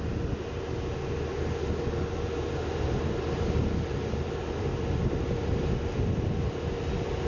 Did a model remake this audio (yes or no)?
no